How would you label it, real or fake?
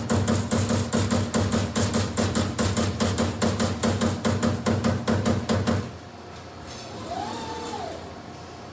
real